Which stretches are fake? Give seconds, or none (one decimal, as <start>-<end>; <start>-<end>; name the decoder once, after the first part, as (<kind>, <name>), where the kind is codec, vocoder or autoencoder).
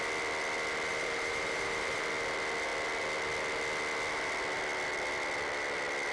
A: 0.9-2.1 (vocoder, BigVGAN v2)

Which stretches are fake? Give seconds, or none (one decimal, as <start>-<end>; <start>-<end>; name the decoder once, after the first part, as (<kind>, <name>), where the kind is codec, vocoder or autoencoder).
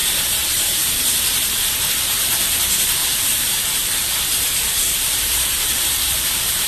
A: 0.0-6.7 (vocoder, BigVGAN v2)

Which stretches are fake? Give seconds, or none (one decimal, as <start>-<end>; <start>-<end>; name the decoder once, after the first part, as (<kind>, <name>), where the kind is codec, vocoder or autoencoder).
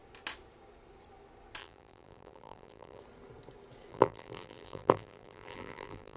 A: 1.6-3.0 (vocoder, BigVGAN v2); 3.9-6.2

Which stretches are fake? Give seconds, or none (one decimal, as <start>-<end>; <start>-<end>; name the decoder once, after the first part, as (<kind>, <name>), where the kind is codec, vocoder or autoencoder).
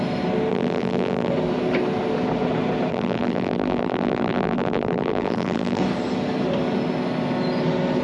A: 0.5-1.3 (vocoder, BigVGAN v2); 2.9-5.8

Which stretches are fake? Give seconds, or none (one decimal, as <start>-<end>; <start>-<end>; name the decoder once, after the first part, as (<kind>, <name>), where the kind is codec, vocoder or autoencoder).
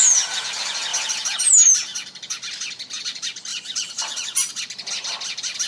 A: 3.5-4.6 (vocoder, BigVGAN v2)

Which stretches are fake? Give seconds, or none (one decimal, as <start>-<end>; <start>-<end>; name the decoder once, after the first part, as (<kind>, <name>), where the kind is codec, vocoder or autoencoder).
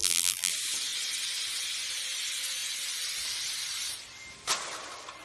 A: 0.0-0.5 (vocoder, BigVGAN v2)